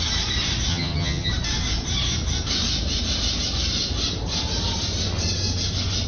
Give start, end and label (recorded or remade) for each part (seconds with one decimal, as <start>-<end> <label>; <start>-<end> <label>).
0.0-0.7 recorded; 0.7-1.3 remade; 1.3-6.1 recorded